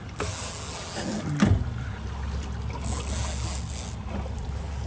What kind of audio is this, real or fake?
real